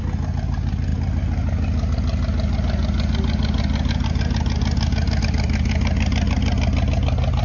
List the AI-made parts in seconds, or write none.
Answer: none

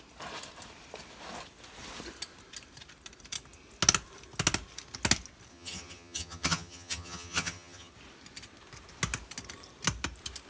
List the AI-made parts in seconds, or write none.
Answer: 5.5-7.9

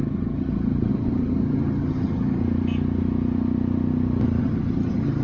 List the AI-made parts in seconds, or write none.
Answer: 0.0-2.4; 4.4-5.2

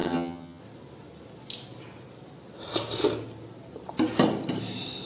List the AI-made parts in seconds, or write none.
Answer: 0.0-0.6

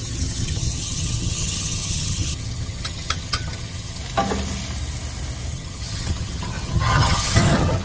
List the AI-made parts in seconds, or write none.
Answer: 0.0-4.0; 5.5-7.8